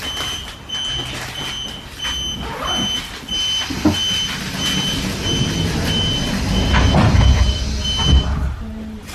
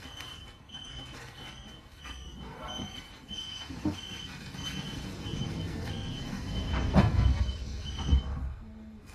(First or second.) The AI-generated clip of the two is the second